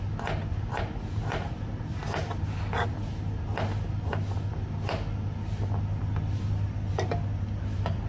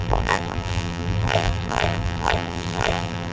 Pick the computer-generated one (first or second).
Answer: second